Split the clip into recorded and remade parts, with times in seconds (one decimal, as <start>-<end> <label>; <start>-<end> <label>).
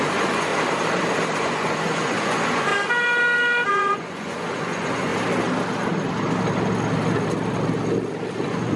0.0-0.5 remade; 0.5-1.4 recorded; 1.4-2.7 remade; 2.7-3.7 recorded; 3.7-5.1 remade; 5.1-8.4 recorded; 8.4-8.8 remade